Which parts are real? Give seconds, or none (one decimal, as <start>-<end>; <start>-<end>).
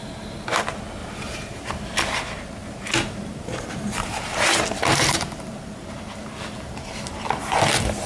0.0-1.0; 1.7-2.6; 6.8-8.1